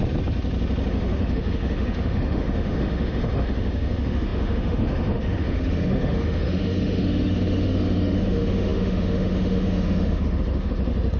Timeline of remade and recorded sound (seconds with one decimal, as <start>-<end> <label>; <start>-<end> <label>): 0.0-0.9 recorded; 0.9-11.2 remade